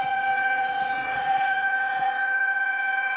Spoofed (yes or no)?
yes